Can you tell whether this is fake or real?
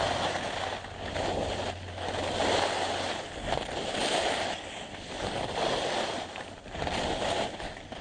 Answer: real